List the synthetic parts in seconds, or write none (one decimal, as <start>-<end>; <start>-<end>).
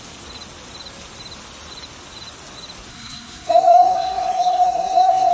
2.9-5.3